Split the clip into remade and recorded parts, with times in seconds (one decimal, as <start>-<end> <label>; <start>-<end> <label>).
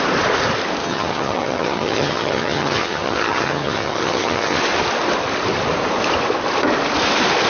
0.0-0.8 recorded; 0.8-4.6 remade; 4.6-7.5 recorded